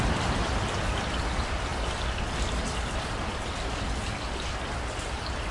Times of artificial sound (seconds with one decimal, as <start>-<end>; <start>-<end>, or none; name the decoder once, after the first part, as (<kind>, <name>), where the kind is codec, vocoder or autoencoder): none